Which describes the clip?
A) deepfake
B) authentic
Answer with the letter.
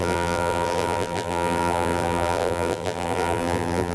A